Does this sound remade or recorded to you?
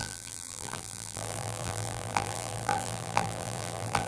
remade